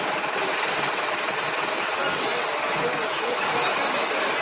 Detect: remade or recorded recorded